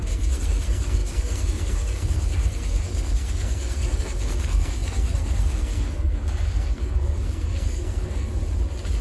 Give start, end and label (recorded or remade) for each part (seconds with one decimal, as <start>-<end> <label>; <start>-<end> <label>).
0.0-8.4 remade; 8.4-9.0 recorded